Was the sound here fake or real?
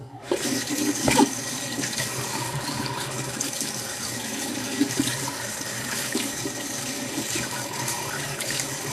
fake